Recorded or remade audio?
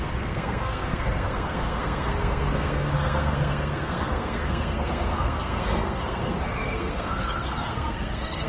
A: remade